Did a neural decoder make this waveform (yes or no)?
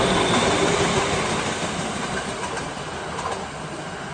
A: no